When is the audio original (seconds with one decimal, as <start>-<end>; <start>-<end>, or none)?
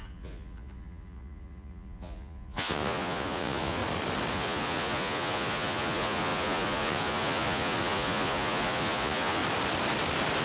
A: 3.8-4.3; 9.4-10.4